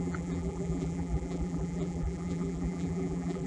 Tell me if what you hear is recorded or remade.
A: remade